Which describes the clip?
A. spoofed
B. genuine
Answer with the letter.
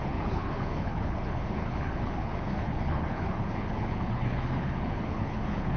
A